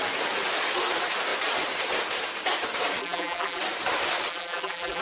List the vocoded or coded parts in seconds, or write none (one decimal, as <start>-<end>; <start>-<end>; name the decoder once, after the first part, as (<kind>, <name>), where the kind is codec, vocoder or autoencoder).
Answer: 3.0-3.6 (vocoder, BigVGAN v2); 4.3-5.0